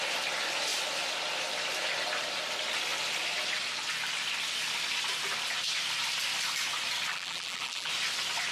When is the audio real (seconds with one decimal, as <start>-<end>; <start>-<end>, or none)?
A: 0.0-7.1; 7.9-8.5